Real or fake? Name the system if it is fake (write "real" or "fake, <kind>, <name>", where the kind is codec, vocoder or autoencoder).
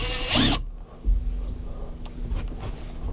real